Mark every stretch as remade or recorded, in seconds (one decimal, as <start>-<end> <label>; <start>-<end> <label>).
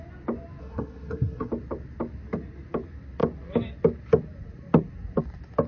0.0-0.6 recorded; 0.6-1.5 remade; 1.5-5.7 recorded